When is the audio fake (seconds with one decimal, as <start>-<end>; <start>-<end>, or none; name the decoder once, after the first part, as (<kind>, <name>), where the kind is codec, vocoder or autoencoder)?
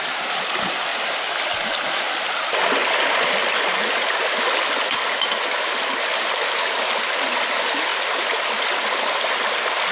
none